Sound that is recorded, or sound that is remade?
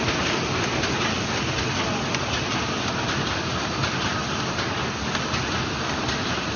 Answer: recorded